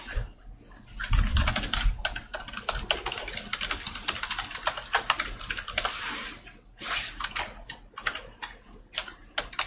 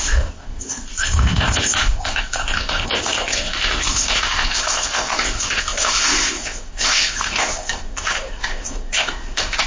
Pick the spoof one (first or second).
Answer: second